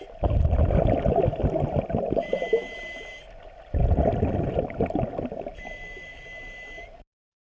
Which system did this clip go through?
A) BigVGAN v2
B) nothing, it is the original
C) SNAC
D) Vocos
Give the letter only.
B